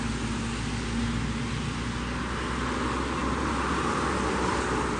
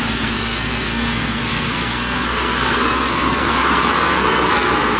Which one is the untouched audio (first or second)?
first